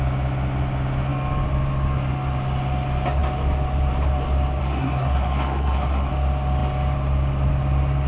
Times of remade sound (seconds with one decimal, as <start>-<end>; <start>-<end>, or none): 4.6-6.1